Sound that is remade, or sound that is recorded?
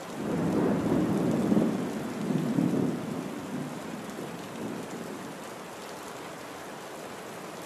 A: recorded